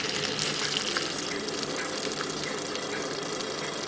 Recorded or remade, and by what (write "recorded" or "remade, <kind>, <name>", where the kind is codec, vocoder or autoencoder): recorded